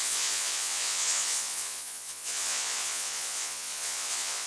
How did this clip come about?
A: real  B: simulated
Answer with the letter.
B